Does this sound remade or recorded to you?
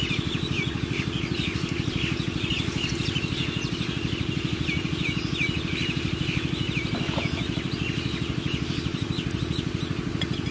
recorded